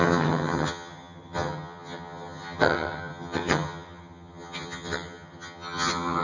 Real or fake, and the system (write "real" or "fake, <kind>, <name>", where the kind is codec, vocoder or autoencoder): fake, vocoder, HiFi-GAN